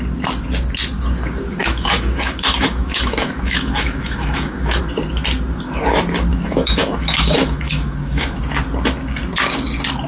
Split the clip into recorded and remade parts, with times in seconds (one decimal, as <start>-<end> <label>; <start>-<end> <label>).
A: 0.0-1.6 recorded; 1.6-4.8 remade; 4.8-6.3 recorded; 6.3-8.4 remade; 8.4-10.1 recorded